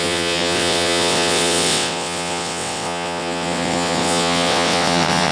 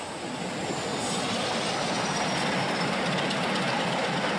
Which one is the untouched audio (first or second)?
second